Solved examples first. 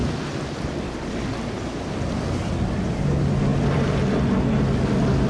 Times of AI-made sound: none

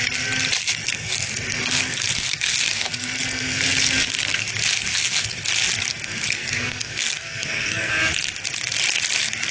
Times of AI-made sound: 0.6-4.5 (codec, SNAC); 4.9-5.5; 5.9-7.9

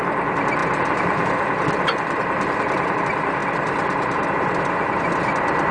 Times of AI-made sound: none

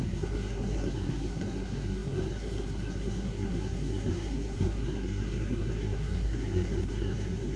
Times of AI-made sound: 0.0-7.6 (codec, SNAC)

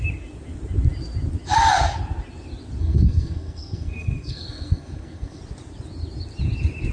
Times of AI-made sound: 2.8-5.4 (codec, SNAC)

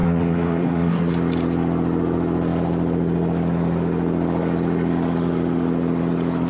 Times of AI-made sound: 0.0-1.1 (codec, SNAC)